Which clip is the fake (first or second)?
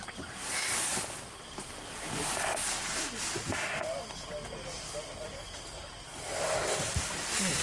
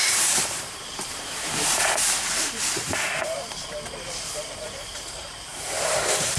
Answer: second